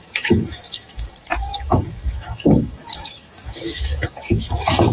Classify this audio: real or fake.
fake